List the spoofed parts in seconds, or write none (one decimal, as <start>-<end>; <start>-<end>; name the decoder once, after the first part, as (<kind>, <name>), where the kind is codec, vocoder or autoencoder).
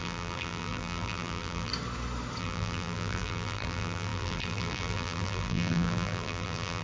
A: 0.0-1.7 (vocoder, BigVGAN v2); 2.4-6.8